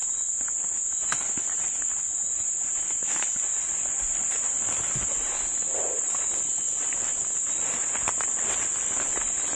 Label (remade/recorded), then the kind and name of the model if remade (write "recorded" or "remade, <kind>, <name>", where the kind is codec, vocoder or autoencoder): recorded